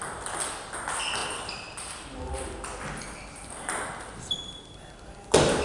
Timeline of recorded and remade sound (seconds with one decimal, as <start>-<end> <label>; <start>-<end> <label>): 0.0-5.6 recorded